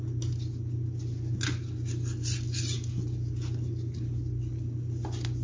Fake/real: real